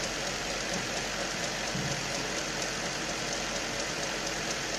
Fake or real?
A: fake